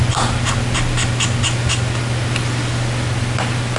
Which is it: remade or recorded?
recorded